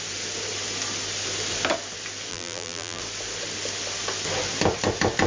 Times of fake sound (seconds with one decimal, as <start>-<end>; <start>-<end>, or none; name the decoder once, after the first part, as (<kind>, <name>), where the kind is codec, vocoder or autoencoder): 2.3-3.0 (vocoder, BigVGAN v2)